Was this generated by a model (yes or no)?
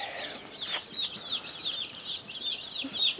no